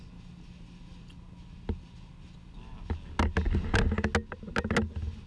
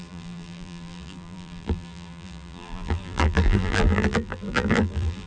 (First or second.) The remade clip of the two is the second